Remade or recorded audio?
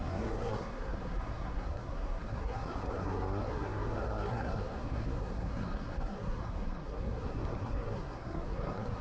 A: remade